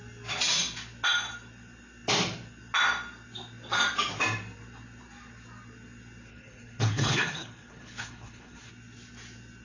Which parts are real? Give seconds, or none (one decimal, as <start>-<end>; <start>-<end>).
0.0-6.3; 8.7-9.6